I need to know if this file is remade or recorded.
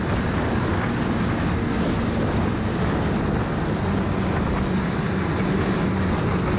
recorded